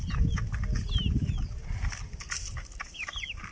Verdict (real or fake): real